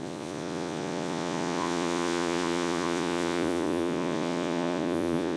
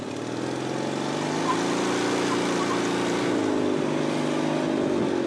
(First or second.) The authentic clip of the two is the second